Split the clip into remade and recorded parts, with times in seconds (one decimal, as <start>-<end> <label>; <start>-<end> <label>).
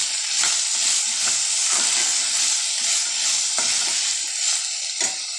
0.0-5.4 recorded